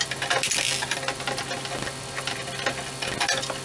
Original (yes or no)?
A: yes